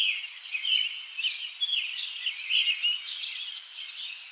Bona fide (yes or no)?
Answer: yes